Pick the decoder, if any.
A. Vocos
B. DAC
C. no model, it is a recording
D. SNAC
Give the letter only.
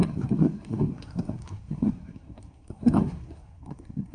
D